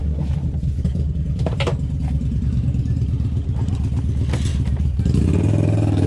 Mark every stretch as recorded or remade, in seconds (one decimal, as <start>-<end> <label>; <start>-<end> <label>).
0.0-3.7 remade; 3.7-4.5 recorded; 4.5-6.1 remade

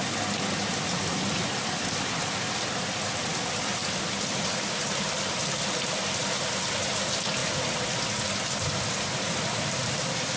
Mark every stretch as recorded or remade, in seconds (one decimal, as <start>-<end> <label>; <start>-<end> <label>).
0.0-0.7 recorded; 0.7-10.4 remade

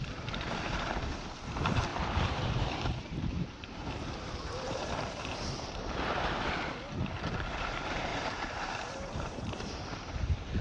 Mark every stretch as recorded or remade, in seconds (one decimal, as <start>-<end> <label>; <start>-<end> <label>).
0.0-10.6 remade

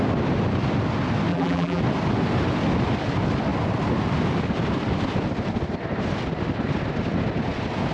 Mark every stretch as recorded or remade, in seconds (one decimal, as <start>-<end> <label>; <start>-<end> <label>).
0.0-1.3 recorded; 1.3-1.8 remade; 1.8-7.9 recorded

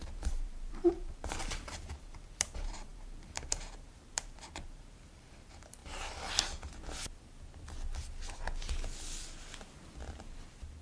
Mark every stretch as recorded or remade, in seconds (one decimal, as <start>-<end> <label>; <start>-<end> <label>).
0.0-5.8 remade; 5.8-10.1 recorded; 10.1-10.8 remade

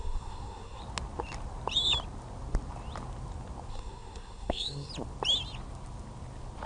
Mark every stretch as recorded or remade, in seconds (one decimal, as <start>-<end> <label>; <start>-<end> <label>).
0.0-0.8 remade; 0.8-3.7 recorded; 3.7-4.9 remade; 4.9-6.7 recorded

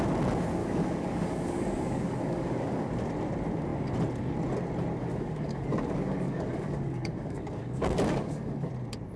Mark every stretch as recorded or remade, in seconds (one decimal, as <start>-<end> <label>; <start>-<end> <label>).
0.0-0.6 recorded; 0.6-2.9 remade; 2.9-5.1 recorded; 5.1-8.7 remade; 8.7-9.2 recorded